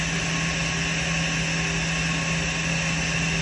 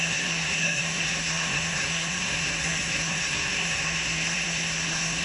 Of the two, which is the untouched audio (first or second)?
first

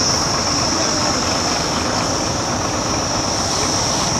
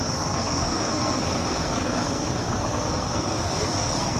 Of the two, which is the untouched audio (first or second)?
first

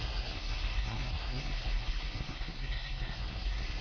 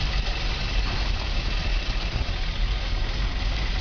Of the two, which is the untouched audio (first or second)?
second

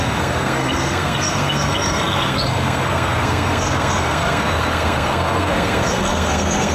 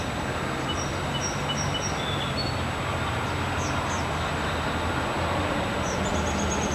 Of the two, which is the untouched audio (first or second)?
second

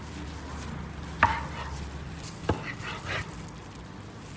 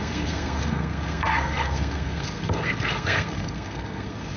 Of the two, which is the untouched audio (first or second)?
first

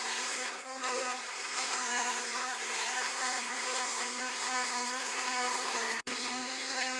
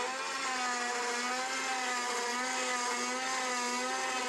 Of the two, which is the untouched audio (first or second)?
second